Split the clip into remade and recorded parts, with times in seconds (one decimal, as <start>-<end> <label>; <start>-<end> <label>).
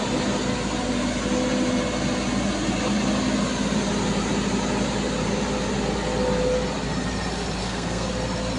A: 0.0-7.6 recorded; 7.6-8.1 remade; 8.1-8.6 recorded